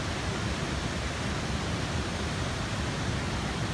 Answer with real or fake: real